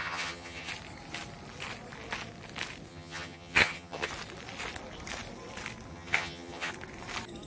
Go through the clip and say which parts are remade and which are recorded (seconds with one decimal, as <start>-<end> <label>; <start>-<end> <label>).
0.0-0.7 remade; 0.7-2.9 recorded; 2.9-4.1 remade; 4.1-5.9 recorded; 5.9-6.7 remade; 6.7-7.5 recorded

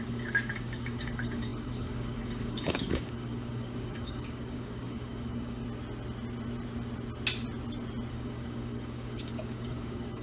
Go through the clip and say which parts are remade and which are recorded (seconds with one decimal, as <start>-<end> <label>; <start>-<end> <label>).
0.0-5.6 remade; 5.6-8.1 recorded; 8.1-10.2 remade

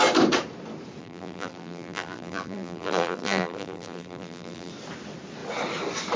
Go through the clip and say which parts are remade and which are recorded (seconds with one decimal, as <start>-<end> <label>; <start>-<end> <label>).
0.0-1.0 recorded; 1.0-4.7 remade; 4.7-6.2 recorded

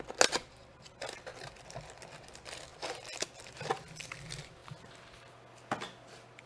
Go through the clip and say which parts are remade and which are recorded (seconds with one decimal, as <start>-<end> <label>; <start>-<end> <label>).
0.0-6.5 recorded

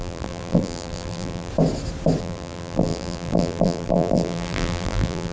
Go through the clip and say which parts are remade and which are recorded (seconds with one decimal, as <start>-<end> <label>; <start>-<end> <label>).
0.0-1.5 remade; 1.5-2.2 recorded; 2.2-5.3 remade